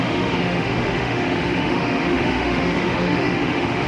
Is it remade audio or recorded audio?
remade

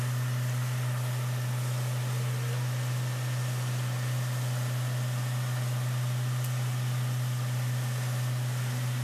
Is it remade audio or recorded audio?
recorded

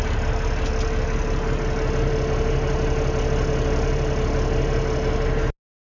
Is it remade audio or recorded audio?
recorded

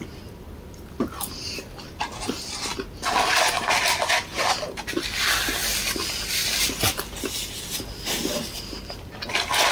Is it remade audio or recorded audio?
recorded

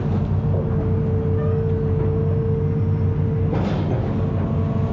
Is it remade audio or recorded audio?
recorded